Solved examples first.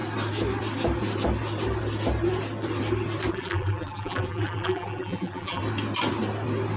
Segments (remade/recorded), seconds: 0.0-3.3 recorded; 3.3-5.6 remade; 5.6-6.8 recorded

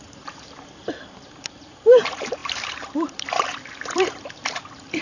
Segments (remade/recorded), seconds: 0.0-5.0 remade

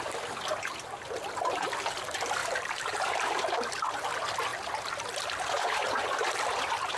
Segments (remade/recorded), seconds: 0.0-2.4 recorded; 2.4-3.2 remade; 3.2-7.0 recorded

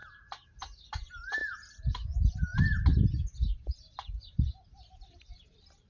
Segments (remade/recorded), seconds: 0.0-2.5 remade; 2.5-3.2 recorded; 3.2-5.9 remade

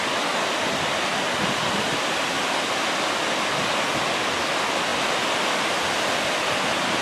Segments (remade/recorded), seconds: 0.0-7.0 recorded

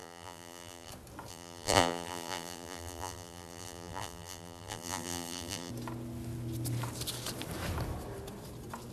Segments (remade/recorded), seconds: 0.0-0.9 remade; 0.9-1.3 recorded; 1.3-5.7 remade; 5.7-8.9 recorded